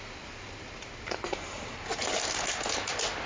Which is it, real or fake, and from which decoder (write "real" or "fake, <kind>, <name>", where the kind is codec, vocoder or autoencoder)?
real